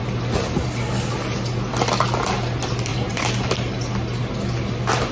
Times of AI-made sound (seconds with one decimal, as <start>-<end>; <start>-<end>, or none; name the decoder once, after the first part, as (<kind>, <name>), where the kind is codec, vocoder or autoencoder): 2.9-3.7 (vocoder, BigVGAN v2)